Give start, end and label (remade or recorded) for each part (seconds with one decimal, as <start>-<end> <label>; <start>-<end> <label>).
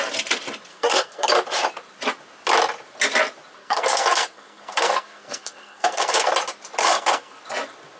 0.0-0.7 recorded; 0.7-1.3 remade; 1.3-3.6 recorded; 3.6-6.3 remade; 6.3-6.8 recorded; 6.8-7.4 remade; 7.4-8.0 recorded